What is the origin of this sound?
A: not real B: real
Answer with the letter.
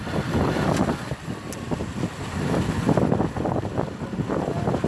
B